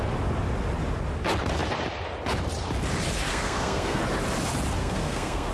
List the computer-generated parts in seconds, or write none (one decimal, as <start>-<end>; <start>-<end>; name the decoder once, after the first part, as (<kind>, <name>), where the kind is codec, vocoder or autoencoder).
3.3-4.0 (codec, SNAC); 4.8-5.5